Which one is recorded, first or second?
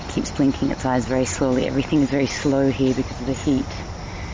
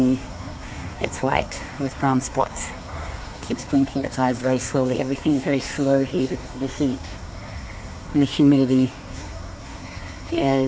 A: first